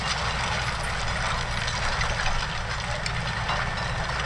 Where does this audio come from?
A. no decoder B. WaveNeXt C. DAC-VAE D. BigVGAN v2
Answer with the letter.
A